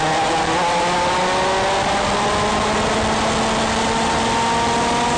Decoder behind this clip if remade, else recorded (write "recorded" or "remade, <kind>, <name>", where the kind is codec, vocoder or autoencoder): recorded